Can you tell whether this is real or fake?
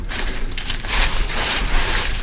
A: fake